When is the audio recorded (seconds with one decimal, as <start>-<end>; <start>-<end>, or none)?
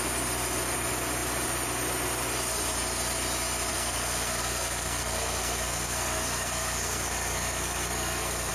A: 0.0-3.7